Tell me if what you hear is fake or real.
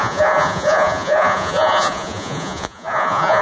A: fake